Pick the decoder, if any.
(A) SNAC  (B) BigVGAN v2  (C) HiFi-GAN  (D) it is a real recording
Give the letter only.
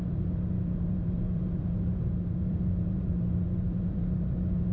B